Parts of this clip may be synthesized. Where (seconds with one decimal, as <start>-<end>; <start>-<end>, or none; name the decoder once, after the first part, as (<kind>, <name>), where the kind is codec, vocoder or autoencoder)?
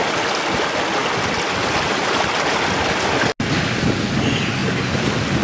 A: none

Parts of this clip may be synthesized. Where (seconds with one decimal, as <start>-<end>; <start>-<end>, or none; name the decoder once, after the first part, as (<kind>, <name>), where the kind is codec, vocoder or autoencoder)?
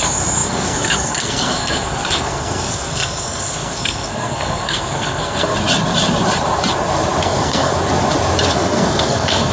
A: 0.0-5.5 (codec, SNAC); 7.2-7.7; 8.4-9.5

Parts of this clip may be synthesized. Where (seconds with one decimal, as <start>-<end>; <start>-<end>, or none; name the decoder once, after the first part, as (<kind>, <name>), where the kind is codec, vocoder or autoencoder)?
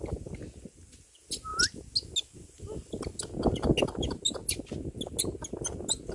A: none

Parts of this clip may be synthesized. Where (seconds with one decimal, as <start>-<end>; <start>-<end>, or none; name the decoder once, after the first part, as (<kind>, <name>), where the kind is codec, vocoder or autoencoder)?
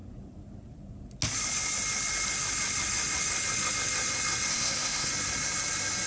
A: 4.5-5.1 (codec, SNAC)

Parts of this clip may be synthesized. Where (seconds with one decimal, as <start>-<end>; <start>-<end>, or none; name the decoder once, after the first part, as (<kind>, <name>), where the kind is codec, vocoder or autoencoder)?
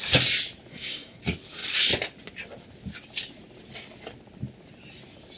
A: 0.7-1.2 (codec, SNAC)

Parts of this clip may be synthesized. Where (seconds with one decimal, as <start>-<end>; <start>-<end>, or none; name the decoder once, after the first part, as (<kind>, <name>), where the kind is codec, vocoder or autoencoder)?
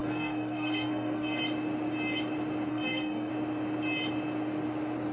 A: 0.0-1.4 (codec, SNAC); 2.7-3.3